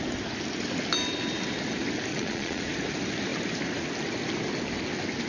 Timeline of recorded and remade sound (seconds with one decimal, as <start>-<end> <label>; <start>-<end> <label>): 0.0-2.1 recorded; 2.1-2.6 remade; 2.6-5.3 recorded